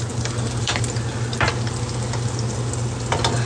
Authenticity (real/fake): real